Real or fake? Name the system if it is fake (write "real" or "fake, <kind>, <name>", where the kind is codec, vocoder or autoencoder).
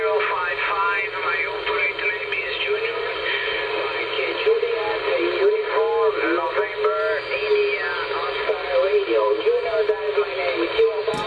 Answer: real